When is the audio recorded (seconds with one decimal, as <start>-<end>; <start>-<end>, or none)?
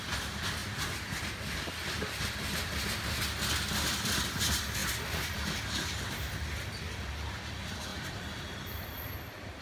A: 0.0-7.9; 8.4-9.6